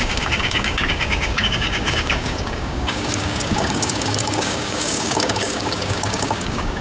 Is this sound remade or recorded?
remade